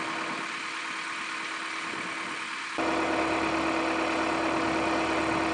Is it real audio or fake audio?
real